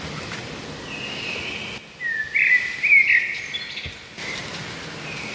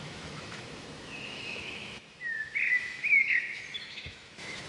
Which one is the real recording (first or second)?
first